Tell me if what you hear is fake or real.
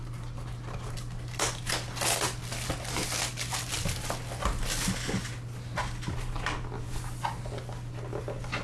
real